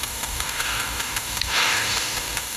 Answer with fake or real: fake